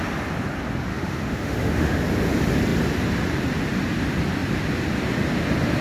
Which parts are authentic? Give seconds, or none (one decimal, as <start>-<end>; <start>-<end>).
0.0-0.9; 2.0-5.8

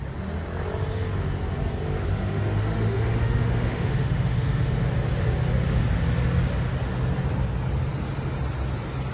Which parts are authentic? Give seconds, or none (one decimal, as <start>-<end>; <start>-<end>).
0.0-2.1; 4.9-9.1

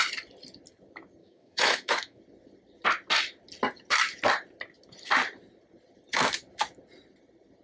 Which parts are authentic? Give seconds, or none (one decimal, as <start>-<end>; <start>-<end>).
0.0-1.2; 2.2-7.6

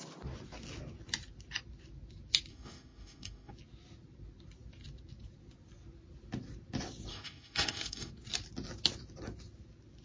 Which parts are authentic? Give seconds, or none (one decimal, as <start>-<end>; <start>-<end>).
0.0-2.5; 3.5-7.1; 8.1-10.0

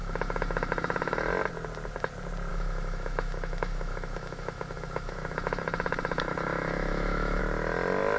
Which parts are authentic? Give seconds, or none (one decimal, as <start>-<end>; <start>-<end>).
1.3-2.5; 7.4-8.2